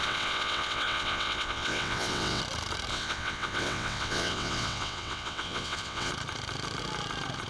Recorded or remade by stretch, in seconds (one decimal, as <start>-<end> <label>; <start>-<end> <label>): 0.0-2.4 remade; 2.4-2.9 recorded; 2.9-6.1 remade; 6.1-7.5 recorded